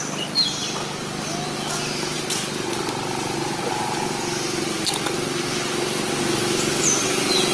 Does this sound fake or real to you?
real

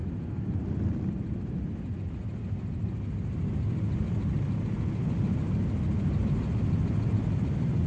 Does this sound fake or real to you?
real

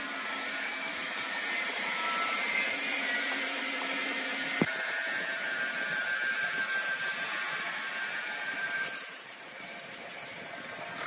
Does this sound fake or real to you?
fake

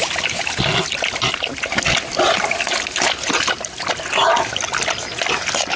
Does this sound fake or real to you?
real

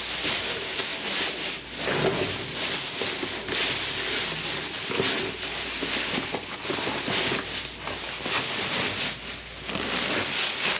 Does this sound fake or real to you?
real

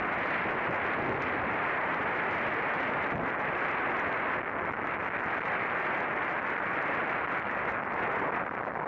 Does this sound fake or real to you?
real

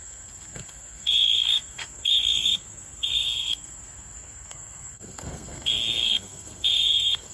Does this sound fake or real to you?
fake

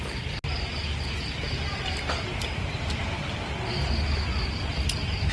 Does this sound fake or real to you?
real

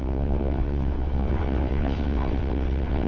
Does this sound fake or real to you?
fake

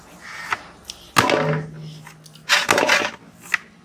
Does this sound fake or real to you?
real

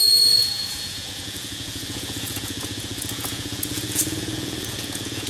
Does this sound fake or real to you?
fake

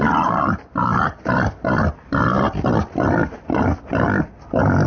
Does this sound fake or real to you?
fake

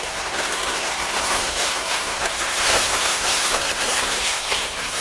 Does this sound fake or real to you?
fake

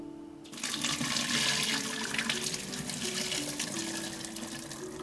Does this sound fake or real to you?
real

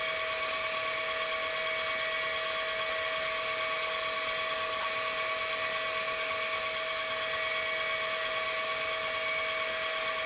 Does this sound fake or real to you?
real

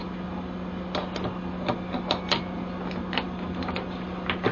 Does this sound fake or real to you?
real